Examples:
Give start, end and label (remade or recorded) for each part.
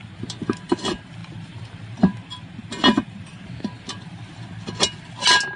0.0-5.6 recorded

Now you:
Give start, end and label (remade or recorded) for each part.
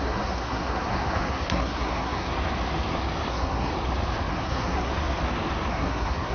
0.0-2.3 remade; 2.3-3.3 recorded; 3.3-3.7 remade; 3.7-4.3 recorded; 4.3-4.9 remade; 4.9-5.7 recorded; 5.7-6.3 remade